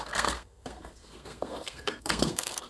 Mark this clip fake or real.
fake